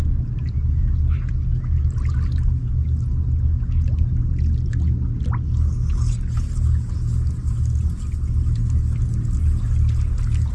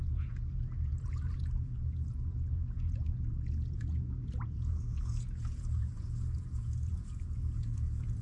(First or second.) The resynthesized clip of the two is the second